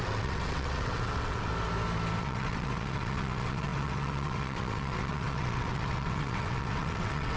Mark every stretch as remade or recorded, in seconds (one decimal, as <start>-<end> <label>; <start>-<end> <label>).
0.0-1.5 remade; 1.5-2.2 recorded; 2.2-7.4 remade